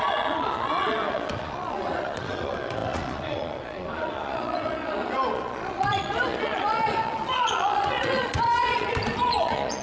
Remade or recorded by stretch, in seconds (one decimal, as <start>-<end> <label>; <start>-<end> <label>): 0.0-9.8 remade